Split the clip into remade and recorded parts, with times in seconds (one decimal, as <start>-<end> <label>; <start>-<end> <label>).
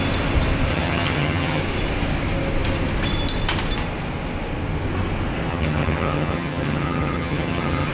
0.0-0.7 recorded; 0.7-1.6 remade; 1.6-5.5 recorded; 5.5-7.9 remade